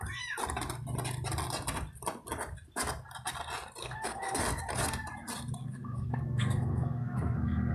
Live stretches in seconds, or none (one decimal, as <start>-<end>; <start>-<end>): 0.0-3.8; 4.4-5.6